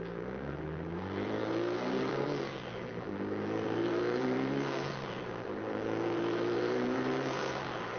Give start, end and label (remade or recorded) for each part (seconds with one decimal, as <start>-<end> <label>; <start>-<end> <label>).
0.0-8.0 remade